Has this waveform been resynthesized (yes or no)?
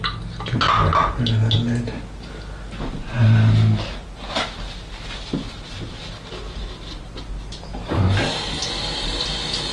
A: no